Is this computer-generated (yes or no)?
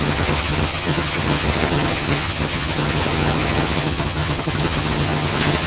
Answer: yes